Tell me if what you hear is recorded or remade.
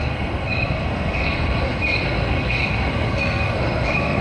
remade